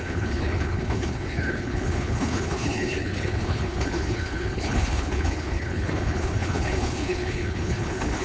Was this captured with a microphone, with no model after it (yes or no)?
no